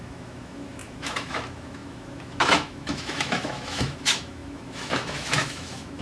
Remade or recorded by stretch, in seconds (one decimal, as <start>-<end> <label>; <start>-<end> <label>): 0.0-6.0 remade